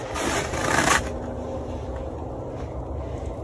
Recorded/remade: recorded